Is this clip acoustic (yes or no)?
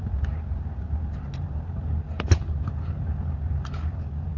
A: yes